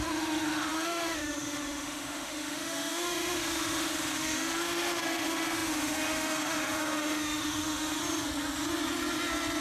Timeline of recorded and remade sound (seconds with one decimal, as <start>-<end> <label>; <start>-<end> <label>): 0.0-8.0 remade; 8.0-9.6 recorded